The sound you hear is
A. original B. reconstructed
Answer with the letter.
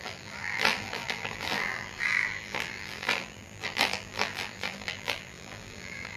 B